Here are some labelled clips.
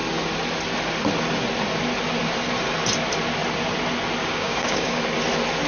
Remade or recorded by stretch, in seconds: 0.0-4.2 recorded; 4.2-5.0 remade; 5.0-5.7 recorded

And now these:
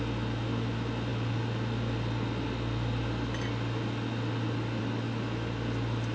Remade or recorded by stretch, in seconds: 0.0-6.1 recorded

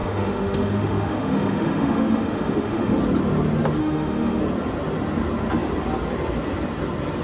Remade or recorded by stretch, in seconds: 0.0-3.0 remade; 3.0-3.8 recorded; 3.8-4.4 remade; 4.4-7.2 recorded

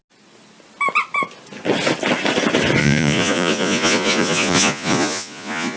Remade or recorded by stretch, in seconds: 0.0-2.8 recorded; 2.8-5.8 remade

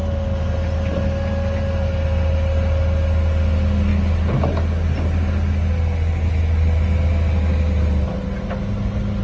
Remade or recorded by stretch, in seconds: 0.0-9.2 recorded

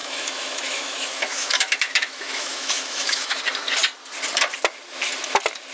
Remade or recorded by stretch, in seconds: 0.0-3.4 remade; 3.4-5.7 recorded

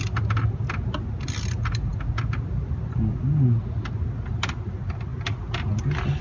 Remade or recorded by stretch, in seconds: 0.0-6.2 recorded